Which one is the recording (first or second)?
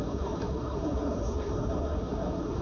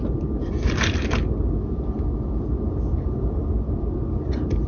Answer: second